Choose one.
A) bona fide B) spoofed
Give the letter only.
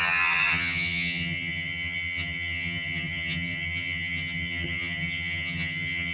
B